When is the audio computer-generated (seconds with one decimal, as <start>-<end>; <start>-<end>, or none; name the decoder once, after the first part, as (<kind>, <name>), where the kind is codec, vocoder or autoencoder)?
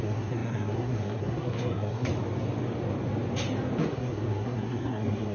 0.0-2.1 (codec, SNAC); 3.9-5.3